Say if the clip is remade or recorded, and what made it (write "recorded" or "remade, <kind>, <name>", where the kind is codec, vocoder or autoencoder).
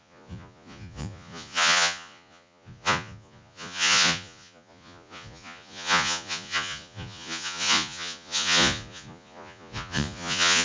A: remade, vocoder, Vocos